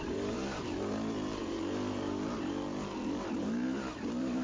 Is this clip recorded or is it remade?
remade